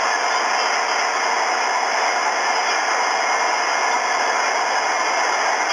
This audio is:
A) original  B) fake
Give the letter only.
A